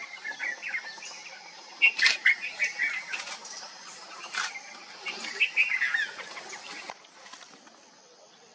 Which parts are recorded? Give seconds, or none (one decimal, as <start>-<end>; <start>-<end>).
0.0-1.2; 4.5-8.5